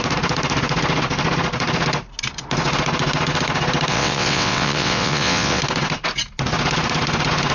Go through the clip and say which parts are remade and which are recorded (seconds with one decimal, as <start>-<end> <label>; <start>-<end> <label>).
0.0-3.9 recorded; 3.9-5.6 remade; 5.6-7.5 recorded